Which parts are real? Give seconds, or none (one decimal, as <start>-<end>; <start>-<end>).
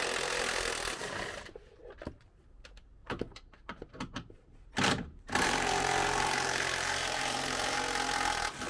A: 0.0-1.0; 1.8-3.0; 7.8-8.7